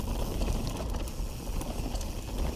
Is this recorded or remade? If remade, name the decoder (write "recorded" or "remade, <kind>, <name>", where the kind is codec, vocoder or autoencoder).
recorded